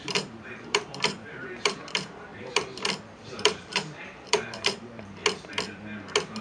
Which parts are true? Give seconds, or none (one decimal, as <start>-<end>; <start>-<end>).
2.3-3.3; 5.2-6.4